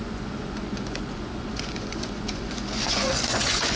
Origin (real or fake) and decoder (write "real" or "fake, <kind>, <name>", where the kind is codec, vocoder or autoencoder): fake, vocoder, Vocos